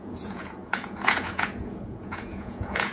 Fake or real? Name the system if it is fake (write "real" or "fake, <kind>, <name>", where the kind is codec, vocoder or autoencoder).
fake, vocoder, Vocos